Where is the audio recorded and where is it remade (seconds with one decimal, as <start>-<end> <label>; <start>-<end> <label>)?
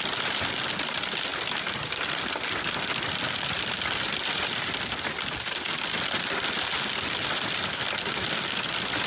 0.0-9.1 recorded